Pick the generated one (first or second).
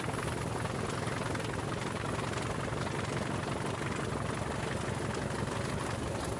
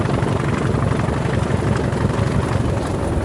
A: second